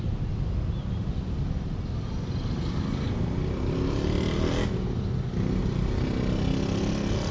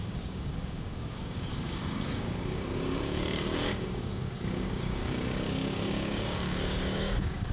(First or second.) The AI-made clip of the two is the second